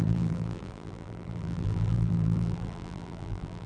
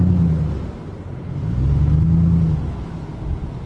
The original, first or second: second